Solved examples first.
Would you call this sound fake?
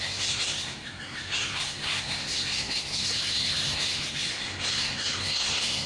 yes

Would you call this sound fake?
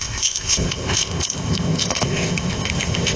yes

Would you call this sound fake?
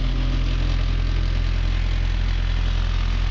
no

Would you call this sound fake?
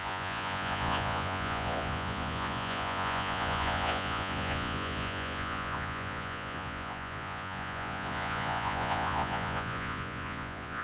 yes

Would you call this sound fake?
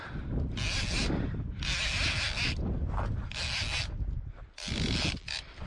no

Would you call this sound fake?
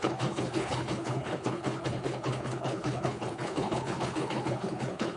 yes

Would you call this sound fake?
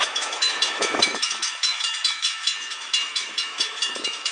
yes